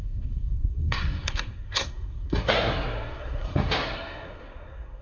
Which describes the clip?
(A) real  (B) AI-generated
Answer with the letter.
B